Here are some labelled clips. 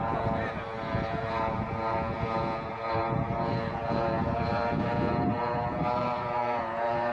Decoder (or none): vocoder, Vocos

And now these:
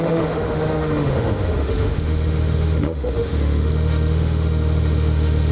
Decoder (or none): autoencoder, DAC-VAE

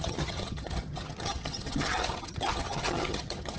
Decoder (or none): vocoder, HiFi-GAN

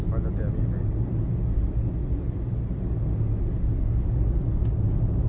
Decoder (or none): none